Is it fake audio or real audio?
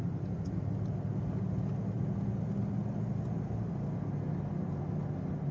real